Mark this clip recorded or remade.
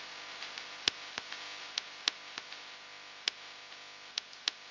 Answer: recorded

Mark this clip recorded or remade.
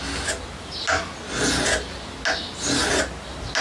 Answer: recorded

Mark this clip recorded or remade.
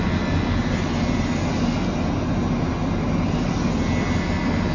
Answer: recorded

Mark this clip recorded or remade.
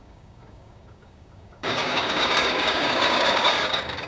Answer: remade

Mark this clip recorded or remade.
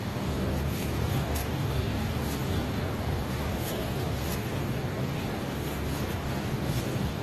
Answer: remade